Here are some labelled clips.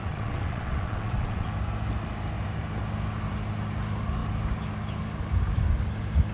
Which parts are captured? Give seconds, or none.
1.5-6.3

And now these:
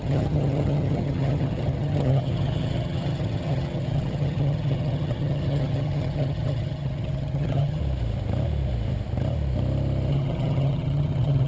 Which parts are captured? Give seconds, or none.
7.8-10.1

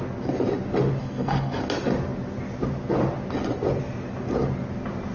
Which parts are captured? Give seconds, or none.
0.0-1.0; 1.6-5.1

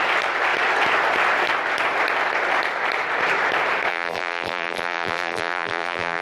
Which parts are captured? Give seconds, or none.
0.0-3.9

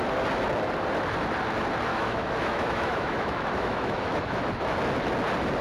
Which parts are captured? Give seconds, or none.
0.0-1.9; 4.4-5.6